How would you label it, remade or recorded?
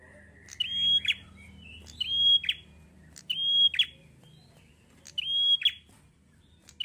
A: recorded